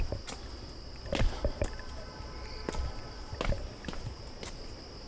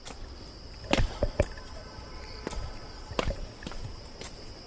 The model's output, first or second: second